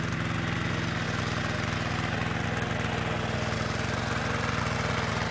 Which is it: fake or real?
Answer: real